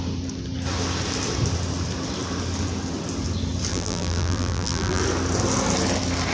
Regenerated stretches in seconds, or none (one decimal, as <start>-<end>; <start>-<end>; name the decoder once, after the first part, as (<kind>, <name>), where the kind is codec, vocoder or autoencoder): 3.7-5.0 (vocoder, BigVGAN v2)